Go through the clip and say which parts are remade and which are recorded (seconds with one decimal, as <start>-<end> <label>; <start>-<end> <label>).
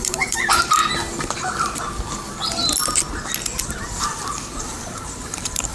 0.0-0.8 remade; 0.8-4.2 recorded; 4.2-5.7 remade